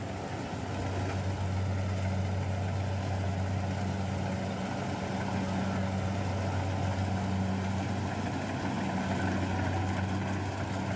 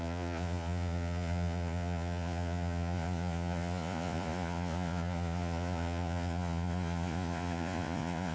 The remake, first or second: second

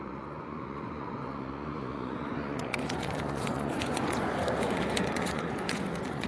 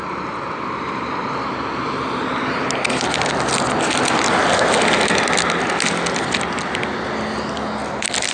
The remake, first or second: first